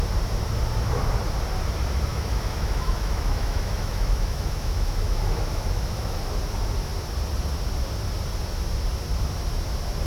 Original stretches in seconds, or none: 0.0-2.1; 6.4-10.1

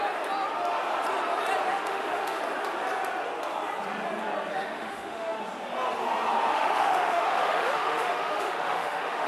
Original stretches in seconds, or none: 0.0-1.7; 2.4-4.5; 5.4-6.5